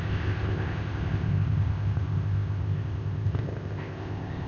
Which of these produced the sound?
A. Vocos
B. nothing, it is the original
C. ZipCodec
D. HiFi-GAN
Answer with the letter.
C